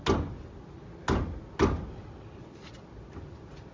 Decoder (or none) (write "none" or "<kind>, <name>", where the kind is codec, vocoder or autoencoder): none